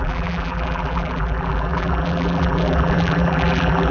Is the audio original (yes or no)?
no